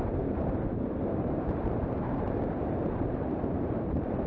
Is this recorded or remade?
remade